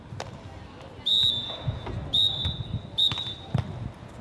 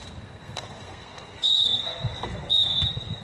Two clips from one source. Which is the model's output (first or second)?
second